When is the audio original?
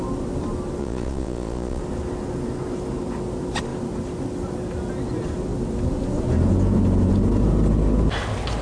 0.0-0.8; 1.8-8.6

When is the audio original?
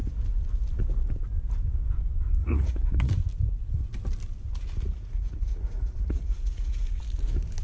0.0-2.4; 3.1-4.9; 7.0-7.6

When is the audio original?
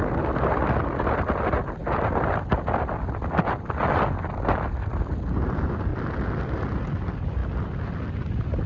0.0-8.7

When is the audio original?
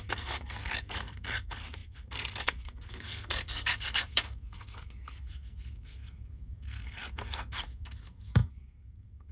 none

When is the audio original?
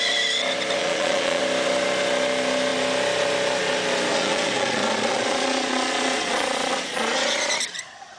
0.0-0.8; 1.4-4.1; 7.5-8.2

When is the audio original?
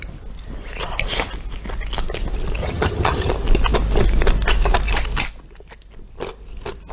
0.0-2.6; 3.3-6.9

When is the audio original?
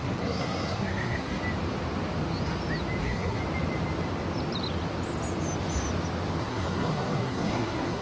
1.4-3.0; 3.4-6.4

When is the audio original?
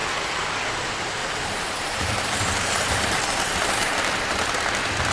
0.0-1.2; 3.2-5.1